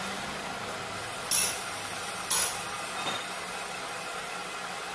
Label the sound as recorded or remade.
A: recorded